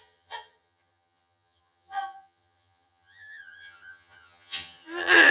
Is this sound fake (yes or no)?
yes